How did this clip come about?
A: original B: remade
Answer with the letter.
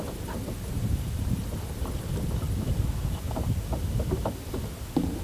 A